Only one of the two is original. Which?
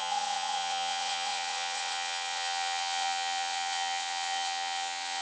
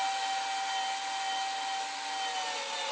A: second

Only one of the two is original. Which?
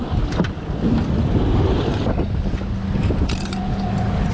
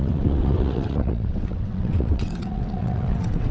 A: first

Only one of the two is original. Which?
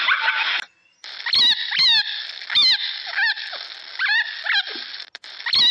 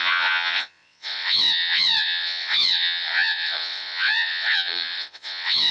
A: first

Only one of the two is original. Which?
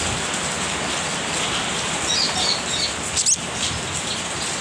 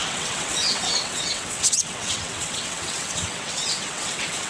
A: first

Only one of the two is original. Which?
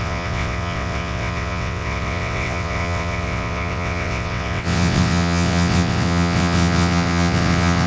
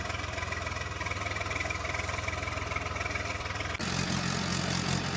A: second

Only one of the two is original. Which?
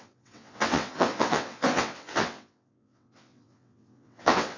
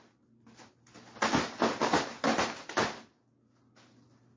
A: second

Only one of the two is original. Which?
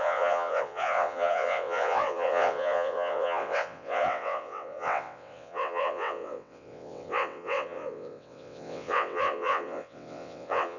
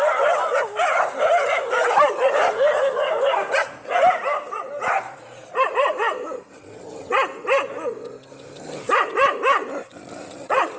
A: second